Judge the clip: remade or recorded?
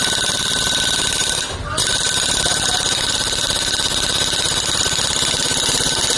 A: recorded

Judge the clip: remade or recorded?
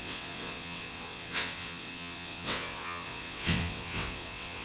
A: remade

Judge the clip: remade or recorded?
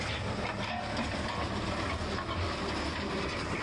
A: recorded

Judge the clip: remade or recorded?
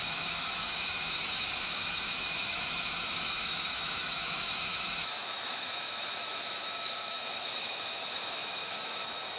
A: remade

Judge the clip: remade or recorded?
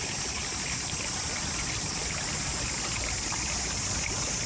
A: recorded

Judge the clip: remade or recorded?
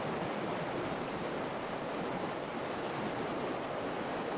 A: recorded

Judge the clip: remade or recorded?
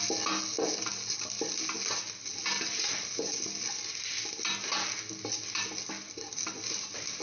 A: recorded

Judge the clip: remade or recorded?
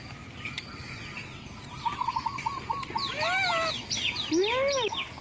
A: recorded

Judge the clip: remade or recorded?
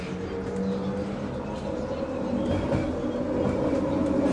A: recorded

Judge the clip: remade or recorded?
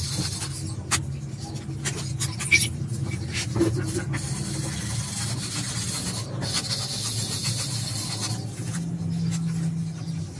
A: recorded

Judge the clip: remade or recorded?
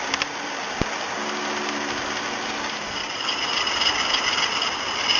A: recorded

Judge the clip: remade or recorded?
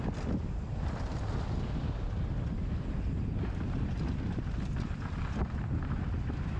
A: remade